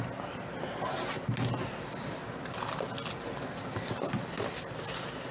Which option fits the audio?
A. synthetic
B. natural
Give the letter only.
B